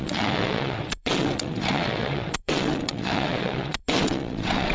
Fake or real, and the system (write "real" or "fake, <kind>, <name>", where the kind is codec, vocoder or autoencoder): fake, vocoder, WaveNeXt